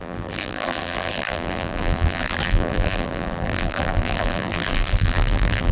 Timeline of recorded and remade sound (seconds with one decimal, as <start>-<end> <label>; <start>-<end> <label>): 0.0-5.7 remade